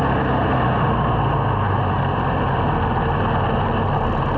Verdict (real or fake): real